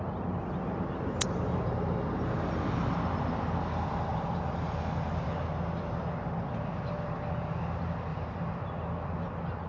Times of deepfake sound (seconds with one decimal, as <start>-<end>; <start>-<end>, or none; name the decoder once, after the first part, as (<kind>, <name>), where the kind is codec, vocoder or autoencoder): 4.1-5.4 (vocoder, BigVGAN v2); 8.1-8.6